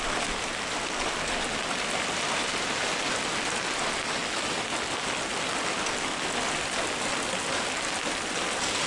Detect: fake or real real